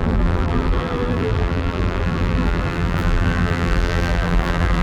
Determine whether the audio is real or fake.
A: fake